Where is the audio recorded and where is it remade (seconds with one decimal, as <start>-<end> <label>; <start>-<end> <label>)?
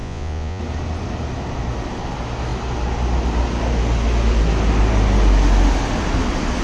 0.0-0.6 remade; 0.6-6.6 recorded